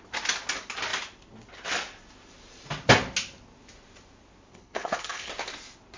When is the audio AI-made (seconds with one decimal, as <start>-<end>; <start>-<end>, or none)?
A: 4.5-5.3